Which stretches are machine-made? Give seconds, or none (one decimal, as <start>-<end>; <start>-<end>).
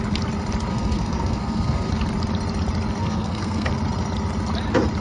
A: 0.7-1.9; 3.0-3.7